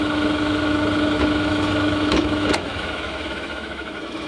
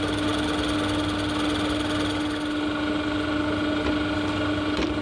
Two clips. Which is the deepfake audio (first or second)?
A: first